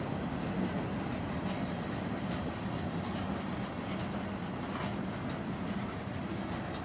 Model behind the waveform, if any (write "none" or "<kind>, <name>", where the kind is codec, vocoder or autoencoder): none